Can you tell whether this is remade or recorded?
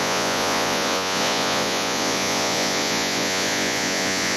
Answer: remade